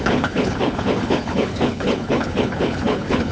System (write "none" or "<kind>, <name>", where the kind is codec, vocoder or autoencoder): codec, HILCodec